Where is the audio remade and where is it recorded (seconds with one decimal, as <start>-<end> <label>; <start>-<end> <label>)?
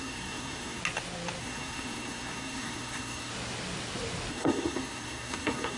0.0-0.8 remade; 0.8-1.4 recorded; 1.4-3.3 remade; 3.3-4.3 recorded; 4.3-5.8 remade